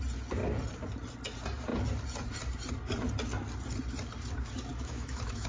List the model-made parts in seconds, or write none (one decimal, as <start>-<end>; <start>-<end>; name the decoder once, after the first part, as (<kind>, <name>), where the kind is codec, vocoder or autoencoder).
4.7-5.5 (autoencoder, DAC-VAE)

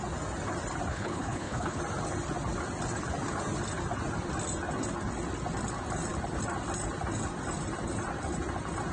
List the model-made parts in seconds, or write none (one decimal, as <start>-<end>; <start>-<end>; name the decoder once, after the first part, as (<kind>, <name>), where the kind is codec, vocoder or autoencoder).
0.9-1.8 (codec, HILCodec)

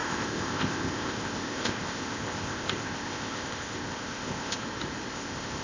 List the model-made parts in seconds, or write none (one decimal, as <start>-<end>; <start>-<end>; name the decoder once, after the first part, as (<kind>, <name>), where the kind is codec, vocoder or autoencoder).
0.0-4.6 (codec, ZipCodec); 5.1-5.6

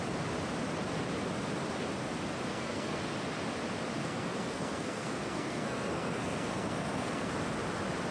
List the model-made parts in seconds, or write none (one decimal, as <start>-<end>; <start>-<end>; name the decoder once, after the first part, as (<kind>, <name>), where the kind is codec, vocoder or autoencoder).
2.5-3.0 (codec, SNAC); 4.0-7.3

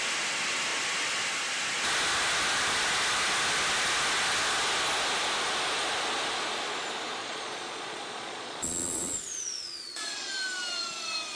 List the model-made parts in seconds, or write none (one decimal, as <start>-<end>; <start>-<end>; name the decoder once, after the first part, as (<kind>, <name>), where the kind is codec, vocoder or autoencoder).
7.2-10.3 (vocoder, Vocos)

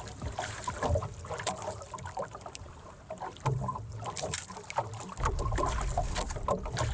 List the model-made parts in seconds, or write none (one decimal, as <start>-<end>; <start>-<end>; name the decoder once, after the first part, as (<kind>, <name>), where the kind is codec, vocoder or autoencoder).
0.0-1.0 (vocoder, BigVGAN v2); 2.7-6.9